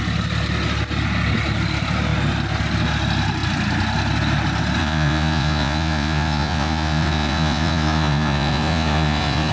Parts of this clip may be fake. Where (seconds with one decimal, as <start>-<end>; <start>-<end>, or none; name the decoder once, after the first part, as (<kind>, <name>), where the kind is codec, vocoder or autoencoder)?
4.8-9.5 (vocoder, Vocos)

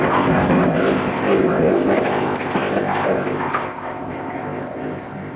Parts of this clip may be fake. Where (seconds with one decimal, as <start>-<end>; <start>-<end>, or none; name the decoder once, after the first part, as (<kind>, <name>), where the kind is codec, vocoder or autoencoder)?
0.0-5.4 (codec, ZipCodec)

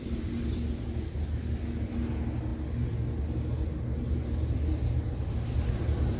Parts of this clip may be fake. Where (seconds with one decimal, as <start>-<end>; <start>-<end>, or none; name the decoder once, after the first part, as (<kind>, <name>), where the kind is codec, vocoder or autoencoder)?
none

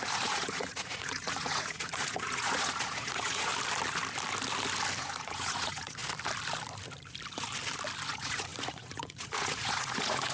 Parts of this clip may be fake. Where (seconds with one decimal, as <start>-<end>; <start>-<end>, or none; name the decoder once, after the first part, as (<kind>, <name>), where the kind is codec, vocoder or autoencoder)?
0.0-3.5 (vocoder, Vocos); 5.0-6.0; 8.1-10.3

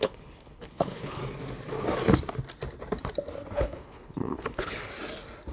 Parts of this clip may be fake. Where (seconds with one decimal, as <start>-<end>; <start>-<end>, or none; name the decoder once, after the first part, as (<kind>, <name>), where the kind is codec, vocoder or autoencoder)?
0.0-1.2 (codec, HILCodec); 3.5-4.9

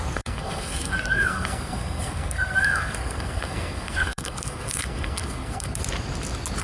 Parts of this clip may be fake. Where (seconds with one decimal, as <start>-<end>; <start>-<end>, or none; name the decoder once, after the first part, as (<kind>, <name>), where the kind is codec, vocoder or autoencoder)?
0.0-5.8 (codec, SNAC)

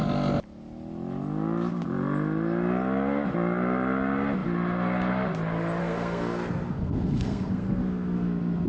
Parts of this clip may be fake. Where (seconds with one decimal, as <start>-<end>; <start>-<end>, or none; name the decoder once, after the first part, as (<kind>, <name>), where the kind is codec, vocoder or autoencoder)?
5.8-8.7 (codec, SNAC)